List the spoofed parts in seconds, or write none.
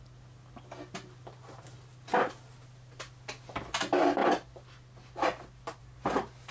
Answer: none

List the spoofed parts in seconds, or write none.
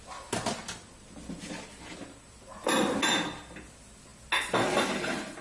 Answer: none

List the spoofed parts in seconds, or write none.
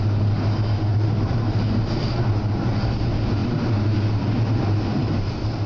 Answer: 0.9-2.3 (vocoder, BigVGAN v2); 4.9-5.7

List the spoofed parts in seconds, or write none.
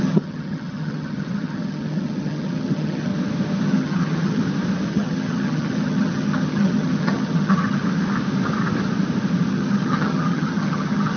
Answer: 0.0-3.1 (vocoder, HiFi-GAN); 3.6-4.4; 4.9-7.8; 9.5-11.2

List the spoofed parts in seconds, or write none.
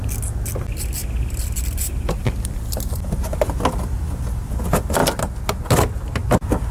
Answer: none